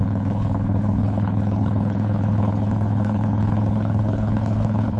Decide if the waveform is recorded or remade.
remade